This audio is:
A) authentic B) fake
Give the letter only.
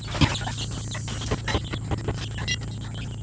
A